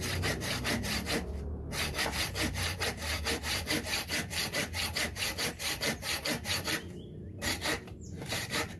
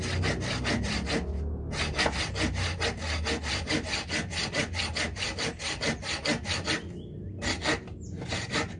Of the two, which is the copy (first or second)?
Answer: first